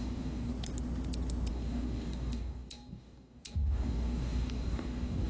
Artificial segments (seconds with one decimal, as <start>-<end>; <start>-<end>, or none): 0.0-0.5; 1.5-5.3